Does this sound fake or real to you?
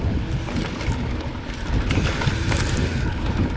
real